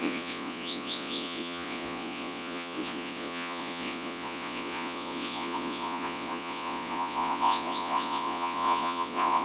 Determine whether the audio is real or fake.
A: fake